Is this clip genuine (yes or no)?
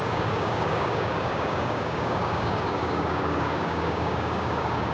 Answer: no